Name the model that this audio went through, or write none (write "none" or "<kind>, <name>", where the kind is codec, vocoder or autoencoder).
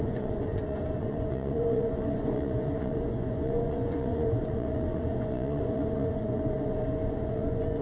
vocoder, Vocos